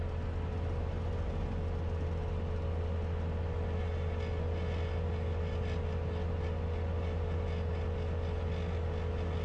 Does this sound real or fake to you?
real